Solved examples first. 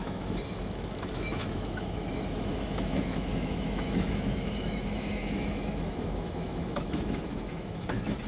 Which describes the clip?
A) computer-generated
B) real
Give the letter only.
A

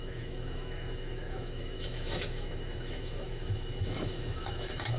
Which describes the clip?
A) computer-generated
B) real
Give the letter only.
A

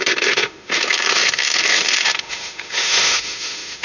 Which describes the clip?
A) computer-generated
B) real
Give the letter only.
A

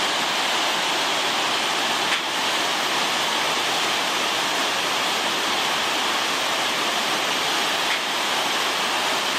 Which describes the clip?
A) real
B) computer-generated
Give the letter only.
A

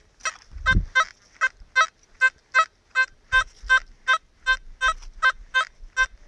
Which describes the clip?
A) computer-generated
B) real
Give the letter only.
B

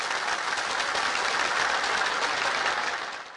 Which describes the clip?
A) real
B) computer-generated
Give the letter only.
A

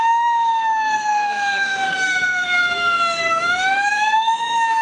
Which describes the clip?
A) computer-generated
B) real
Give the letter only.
A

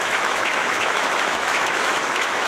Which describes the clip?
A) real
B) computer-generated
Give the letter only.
B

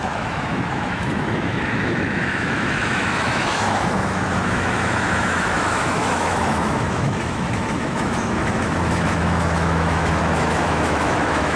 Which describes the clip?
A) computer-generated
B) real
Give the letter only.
A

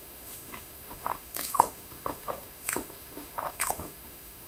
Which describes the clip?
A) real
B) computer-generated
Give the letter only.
B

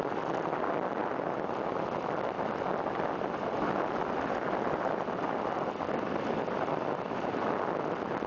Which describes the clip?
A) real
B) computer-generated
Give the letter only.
A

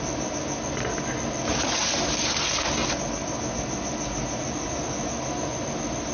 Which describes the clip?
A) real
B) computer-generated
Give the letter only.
A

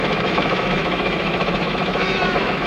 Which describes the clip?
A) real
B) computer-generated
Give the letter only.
B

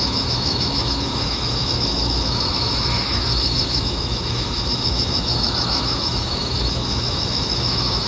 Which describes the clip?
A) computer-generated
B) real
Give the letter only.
A